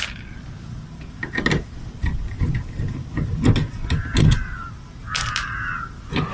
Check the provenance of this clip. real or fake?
real